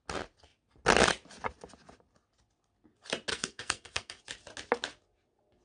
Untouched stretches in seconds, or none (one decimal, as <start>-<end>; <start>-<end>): 0.0-3.3; 4.2-5.6